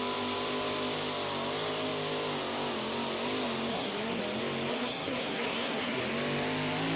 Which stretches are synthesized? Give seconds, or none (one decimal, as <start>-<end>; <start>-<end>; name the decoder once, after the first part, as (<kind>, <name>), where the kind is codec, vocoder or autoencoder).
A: 3.7-4.2 (codec, SNAC); 4.7-6.0